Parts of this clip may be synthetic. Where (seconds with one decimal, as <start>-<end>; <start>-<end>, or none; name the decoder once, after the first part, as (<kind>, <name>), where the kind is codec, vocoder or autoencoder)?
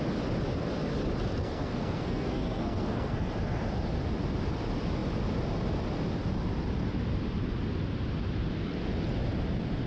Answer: 1.4-3.3 (codec, SNAC)